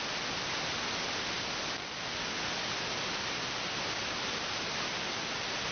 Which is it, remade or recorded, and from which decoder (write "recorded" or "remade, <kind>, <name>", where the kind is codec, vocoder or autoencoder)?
recorded